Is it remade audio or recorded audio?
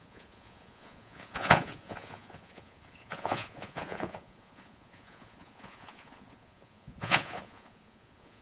remade